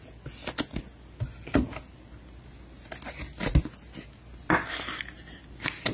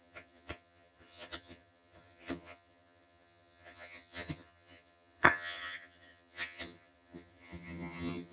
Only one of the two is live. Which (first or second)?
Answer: first